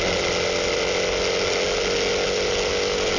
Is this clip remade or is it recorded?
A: recorded